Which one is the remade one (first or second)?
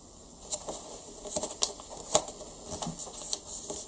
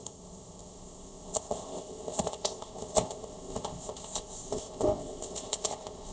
second